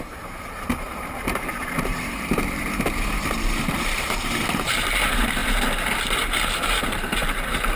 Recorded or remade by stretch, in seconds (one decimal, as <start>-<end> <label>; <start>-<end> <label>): 0.0-7.8 remade